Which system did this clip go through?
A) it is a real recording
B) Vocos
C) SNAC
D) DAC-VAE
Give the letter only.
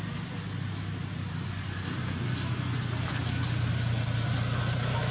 A